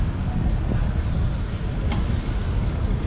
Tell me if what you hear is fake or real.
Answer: real